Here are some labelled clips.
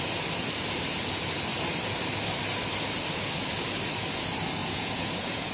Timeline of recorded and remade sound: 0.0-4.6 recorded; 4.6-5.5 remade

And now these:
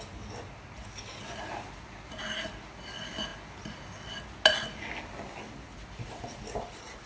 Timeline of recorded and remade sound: 0.0-7.1 recorded